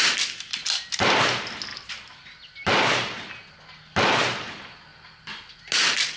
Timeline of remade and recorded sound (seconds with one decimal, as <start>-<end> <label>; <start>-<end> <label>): 0.0-6.2 recorded